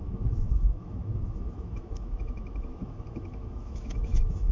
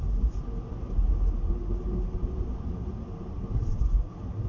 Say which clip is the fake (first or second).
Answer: first